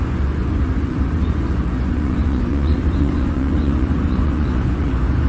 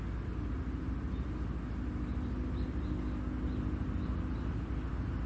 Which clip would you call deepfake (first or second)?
first